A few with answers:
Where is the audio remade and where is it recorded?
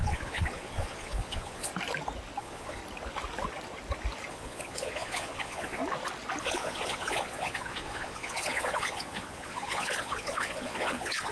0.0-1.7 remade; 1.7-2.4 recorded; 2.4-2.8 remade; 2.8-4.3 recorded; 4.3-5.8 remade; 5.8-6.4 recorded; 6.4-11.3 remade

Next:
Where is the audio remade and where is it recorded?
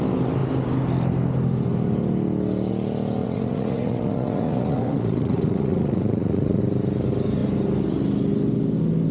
0.0-3.2 recorded; 3.2-6.6 remade; 6.6-9.1 recorded